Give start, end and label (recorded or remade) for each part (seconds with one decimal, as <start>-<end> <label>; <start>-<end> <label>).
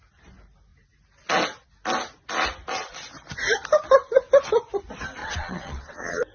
0.0-5.2 recorded; 5.2-6.3 remade